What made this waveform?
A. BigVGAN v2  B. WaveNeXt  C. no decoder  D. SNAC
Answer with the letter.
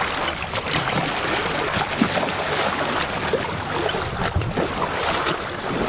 C